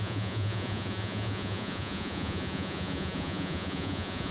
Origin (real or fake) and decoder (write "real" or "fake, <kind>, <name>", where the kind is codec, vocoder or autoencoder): fake, vocoder, Vocos